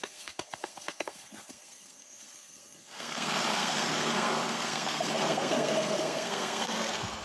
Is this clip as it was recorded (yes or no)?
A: no